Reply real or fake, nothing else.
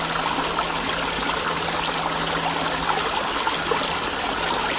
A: real